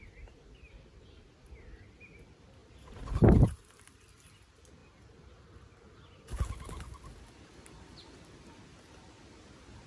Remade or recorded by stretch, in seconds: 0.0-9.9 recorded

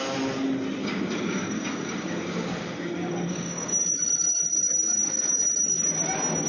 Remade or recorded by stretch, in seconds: 0.0-0.8 recorded; 0.8-4.0 remade; 4.0-6.5 recorded

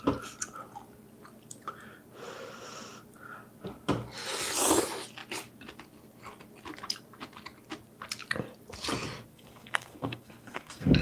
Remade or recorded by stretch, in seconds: 0.0-9.3 recorded; 9.3-11.0 remade

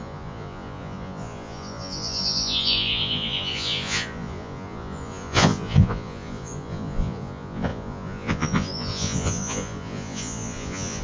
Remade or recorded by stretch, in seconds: 0.0-11.0 remade

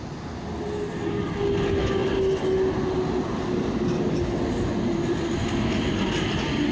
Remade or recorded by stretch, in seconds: 0.0-6.7 recorded